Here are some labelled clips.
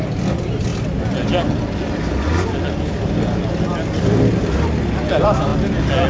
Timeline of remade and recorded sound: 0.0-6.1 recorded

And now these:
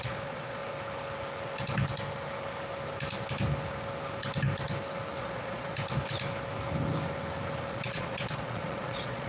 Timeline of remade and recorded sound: 0.0-0.6 remade; 0.6-5.2 recorded; 5.2-5.7 remade; 5.7-7.7 recorded; 7.7-9.3 remade

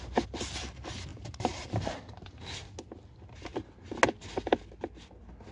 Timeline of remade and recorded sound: 0.0-1.1 recorded; 1.1-2.2 remade; 2.2-5.5 recorded